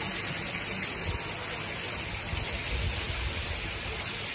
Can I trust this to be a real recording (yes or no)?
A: yes